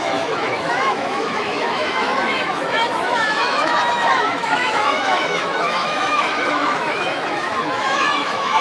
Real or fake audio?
fake